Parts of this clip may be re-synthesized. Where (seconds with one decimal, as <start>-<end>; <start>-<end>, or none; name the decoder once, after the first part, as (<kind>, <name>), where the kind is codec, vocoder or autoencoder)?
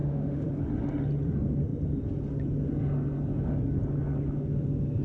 0.0-0.5 (autoencoder, DAC-VAE)